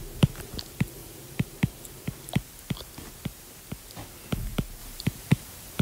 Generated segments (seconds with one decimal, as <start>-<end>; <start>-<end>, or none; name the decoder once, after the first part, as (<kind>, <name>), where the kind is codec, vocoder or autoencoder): 1.0-2.2 (vocoder, BigVGAN v2); 4.8-5.8